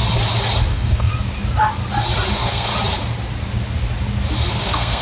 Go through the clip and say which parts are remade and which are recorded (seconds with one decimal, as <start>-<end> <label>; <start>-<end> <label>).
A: 0.0-0.7 recorded; 0.7-1.1 remade; 1.1-2.3 recorded; 2.3-2.7 remade; 2.7-4.5 recorded; 4.5-5.0 remade

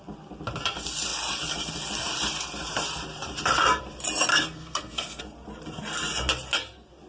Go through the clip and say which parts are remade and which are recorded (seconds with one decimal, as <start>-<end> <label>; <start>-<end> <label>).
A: 0.0-4.3 recorded; 4.3-5.2 remade; 5.2-7.1 recorded

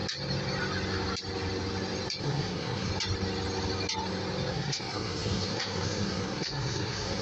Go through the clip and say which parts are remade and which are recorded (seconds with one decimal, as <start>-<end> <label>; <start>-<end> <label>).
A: 0.0-2.2 recorded; 2.2-2.9 remade; 2.9-4.5 recorded; 4.5-7.2 remade

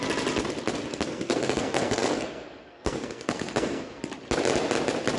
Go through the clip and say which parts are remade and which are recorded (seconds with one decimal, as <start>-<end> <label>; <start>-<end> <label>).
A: 0.0-0.9 recorded; 0.9-4.0 remade; 4.0-5.2 recorded

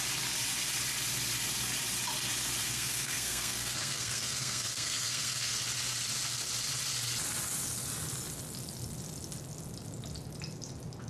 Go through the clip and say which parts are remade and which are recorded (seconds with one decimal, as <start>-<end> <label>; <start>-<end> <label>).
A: 0.0-2.6 recorded; 2.6-5.6 remade; 5.6-11.1 recorded

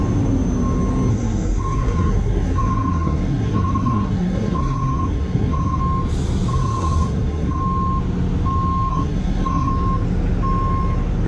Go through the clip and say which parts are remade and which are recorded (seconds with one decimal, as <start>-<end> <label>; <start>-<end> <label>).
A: 0.0-1.1 recorded; 1.1-5.8 remade; 5.8-6.5 recorded; 6.5-7.6 remade; 7.6-8.9 recorded; 8.9-9.7 remade; 9.7-11.3 recorded

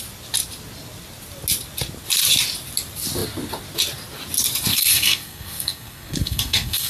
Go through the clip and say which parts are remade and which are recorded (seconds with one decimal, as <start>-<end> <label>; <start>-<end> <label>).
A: 0.0-4.7 recorded; 4.7-6.9 remade

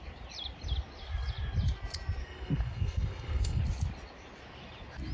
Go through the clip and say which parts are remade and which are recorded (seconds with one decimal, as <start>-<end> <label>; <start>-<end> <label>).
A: 0.0-2.2 recorded; 2.2-3.6 remade; 3.6-5.1 recorded